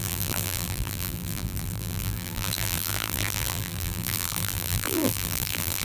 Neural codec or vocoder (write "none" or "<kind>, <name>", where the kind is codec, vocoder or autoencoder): vocoder, BigVGAN v2